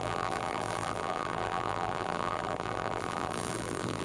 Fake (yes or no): yes